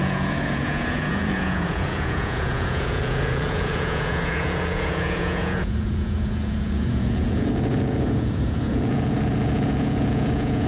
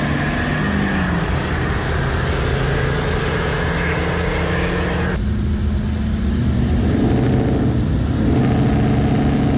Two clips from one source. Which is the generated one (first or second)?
first